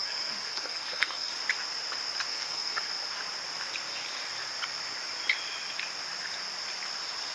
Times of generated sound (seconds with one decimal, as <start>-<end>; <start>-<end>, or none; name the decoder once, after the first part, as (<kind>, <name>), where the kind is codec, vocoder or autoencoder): 0.0-1.3 (codec, SNAC); 2.3-2.9